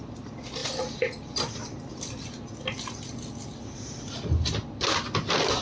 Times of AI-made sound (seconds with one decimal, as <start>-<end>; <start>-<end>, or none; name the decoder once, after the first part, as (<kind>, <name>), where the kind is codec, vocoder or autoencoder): none